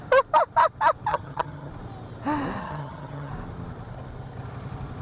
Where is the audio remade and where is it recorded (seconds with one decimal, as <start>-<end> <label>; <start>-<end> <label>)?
0.0-1.1 recorded; 1.1-1.7 remade; 1.7-2.6 recorded; 2.6-3.3 remade; 3.3-5.0 recorded